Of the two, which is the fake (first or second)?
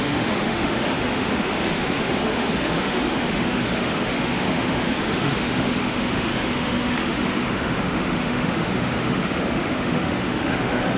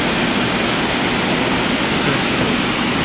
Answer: first